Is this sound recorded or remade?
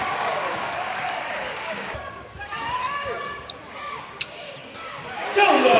remade